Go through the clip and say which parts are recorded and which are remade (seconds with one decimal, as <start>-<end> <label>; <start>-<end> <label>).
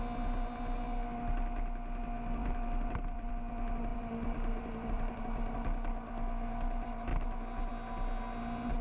0.0-2.4 recorded; 2.4-3.3 remade; 3.3-3.9 recorded; 3.9-5.2 remade; 5.2-8.8 recorded